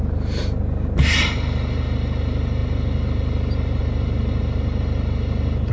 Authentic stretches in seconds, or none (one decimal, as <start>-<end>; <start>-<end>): 0.0-5.7